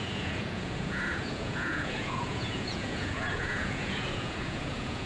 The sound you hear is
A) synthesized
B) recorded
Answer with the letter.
A